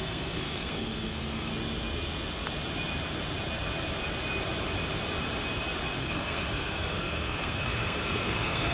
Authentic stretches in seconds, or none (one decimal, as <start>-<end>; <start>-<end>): 1.5-6.0